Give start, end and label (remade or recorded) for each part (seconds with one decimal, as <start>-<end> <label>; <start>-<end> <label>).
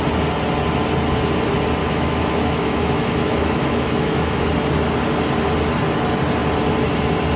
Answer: 0.0-1.8 recorded; 1.8-4.4 remade; 4.4-7.4 recorded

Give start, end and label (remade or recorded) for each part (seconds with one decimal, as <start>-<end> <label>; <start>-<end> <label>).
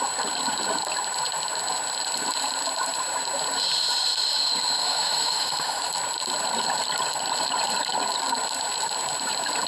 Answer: 0.0-4.8 recorded; 4.8-5.9 remade; 5.9-9.7 recorded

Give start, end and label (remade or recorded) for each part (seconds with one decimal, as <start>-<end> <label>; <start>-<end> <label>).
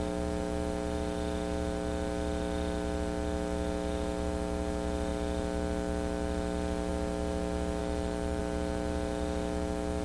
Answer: 0.0-7.8 recorded; 7.8-8.4 remade; 8.4-10.0 recorded